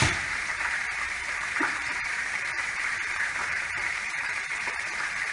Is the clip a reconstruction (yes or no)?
yes